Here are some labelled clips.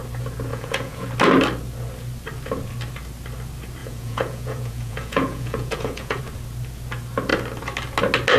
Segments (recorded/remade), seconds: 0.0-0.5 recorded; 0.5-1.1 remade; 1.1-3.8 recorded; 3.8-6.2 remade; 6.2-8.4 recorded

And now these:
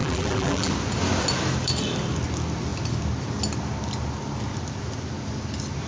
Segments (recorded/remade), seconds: 0.0-0.7 remade; 0.7-5.9 recorded

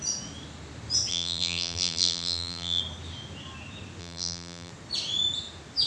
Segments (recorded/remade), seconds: 0.0-1.1 recorded; 1.1-2.8 remade; 2.8-4.0 recorded; 4.0-4.7 remade; 4.7-5.9 recorded